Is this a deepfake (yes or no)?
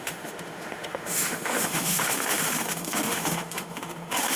yes